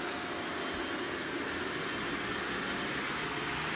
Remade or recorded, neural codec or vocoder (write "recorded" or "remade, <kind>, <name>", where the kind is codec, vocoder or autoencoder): recorded